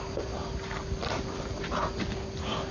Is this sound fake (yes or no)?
no